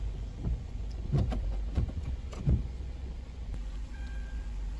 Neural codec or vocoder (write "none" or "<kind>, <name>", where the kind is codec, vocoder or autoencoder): vocoder, Vocos